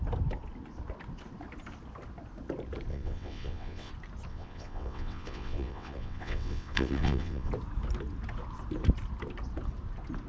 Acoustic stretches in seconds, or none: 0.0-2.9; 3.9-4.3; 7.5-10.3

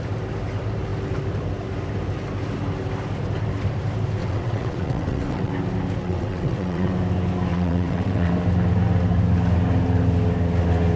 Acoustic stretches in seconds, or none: 0.0-4.2; 5.5-6.0; 6.9-7.5; 8.3-11.0

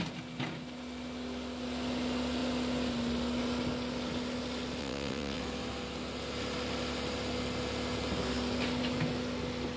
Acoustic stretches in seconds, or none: 0.0-4.8; 5.4-9.8

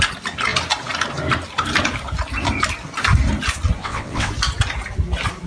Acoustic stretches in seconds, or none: 0.0-3.8; 4.3-5.5

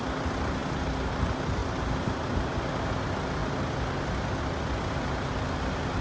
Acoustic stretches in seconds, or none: 0.0-6.0

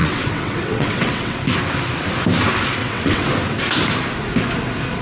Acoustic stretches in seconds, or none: 1.4-2.8; 3.3-5.0

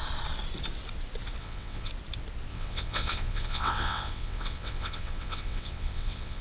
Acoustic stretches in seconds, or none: 0.0-1.4; 1.9-2.5

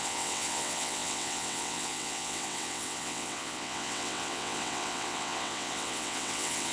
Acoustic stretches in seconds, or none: none